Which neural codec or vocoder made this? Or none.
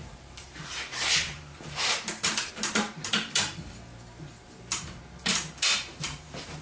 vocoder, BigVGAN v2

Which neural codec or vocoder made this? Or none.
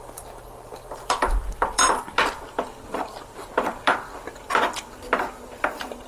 vocoder, BigVGAN v2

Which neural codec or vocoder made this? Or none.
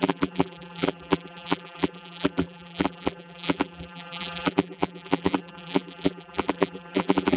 vocoder, BigVGAN v2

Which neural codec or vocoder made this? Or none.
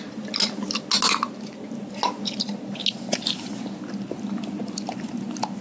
none